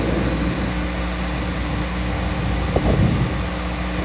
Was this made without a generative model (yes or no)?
yes